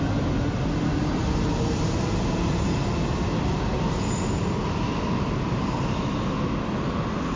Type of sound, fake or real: real